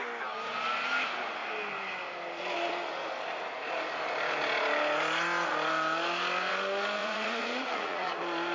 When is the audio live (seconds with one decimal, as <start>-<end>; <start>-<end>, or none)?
0.0-7.0; 8.1-8.5